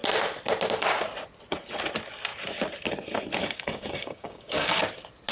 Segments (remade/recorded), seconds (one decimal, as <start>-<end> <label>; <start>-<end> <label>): 0.0-3.4 recorded; 3.4-4.8 remade; 4.8-5.3 recorded